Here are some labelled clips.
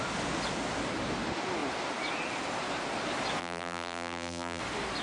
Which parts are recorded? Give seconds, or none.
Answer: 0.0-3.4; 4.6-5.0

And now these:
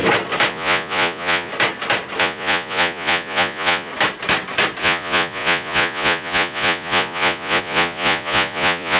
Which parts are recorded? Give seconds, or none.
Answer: 0.0-0.5; 1.5-2.2; 3.9-4.8